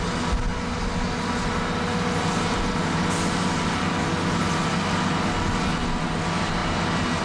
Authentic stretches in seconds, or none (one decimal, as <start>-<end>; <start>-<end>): 0.0-7.2